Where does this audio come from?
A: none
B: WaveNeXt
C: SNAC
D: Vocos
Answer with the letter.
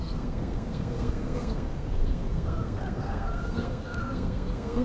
C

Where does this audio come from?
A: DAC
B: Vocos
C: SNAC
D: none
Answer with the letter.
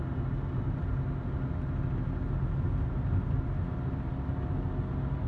D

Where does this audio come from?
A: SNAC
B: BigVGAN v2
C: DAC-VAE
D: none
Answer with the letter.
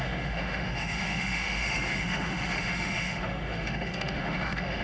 C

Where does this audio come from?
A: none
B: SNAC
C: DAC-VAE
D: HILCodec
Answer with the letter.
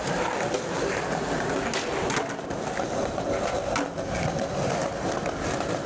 A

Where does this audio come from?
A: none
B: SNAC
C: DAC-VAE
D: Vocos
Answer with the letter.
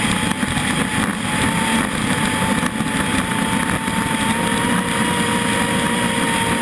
A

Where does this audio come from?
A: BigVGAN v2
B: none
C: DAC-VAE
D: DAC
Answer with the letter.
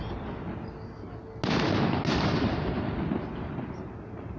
B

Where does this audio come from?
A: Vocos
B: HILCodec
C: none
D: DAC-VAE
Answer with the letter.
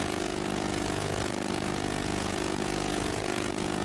A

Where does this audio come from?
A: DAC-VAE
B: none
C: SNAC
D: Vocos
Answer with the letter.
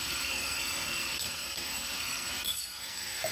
C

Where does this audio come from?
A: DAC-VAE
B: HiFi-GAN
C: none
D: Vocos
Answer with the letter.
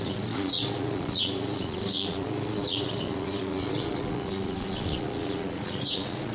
D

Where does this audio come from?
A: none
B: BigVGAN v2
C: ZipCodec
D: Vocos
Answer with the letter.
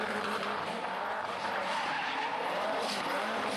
B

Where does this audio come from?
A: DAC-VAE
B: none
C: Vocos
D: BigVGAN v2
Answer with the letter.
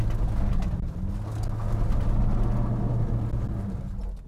B